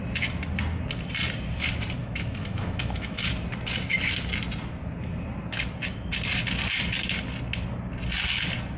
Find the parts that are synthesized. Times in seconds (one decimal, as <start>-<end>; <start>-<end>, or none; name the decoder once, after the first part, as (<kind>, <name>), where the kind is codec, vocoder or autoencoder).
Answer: 2.0-3.3 (autoencoder, DAC-VAE)